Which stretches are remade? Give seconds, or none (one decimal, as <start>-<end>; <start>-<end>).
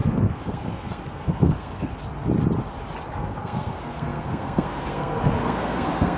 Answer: 0.0-1.9; 3.1-6.2